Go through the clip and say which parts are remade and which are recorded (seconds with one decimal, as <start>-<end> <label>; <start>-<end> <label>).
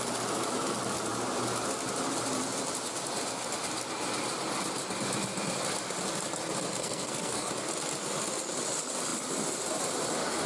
0.0-6.8 recorded; 6.8-7.5 remade; 7.5-10.5 recorded